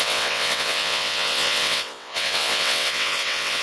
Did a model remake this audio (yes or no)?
yes